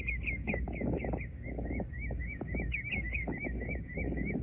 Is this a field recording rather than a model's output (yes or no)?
no